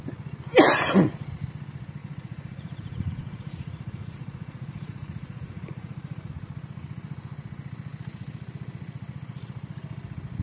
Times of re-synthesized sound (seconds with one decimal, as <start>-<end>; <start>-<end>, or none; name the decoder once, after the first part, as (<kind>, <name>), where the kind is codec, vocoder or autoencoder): 2.0-6.3 (vocoder, Vocos)